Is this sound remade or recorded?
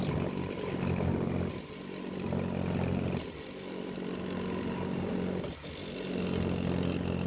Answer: recorded